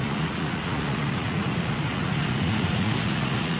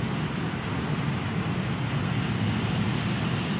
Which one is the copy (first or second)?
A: first